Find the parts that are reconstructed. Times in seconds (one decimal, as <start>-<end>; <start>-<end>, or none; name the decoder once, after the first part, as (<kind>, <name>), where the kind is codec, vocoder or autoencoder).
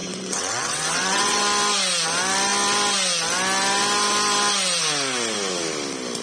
0.0-1.4 (vocoder, WaveNeXt)